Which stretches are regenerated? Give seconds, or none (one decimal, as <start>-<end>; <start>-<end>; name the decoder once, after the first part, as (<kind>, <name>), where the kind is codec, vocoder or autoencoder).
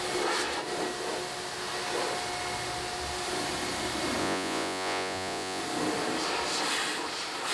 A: 4.2-5.6 (vocoder, Vocos)